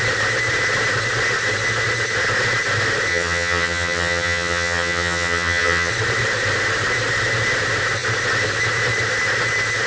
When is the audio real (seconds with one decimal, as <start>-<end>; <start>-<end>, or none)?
0.0-3.1; 5.9-9.9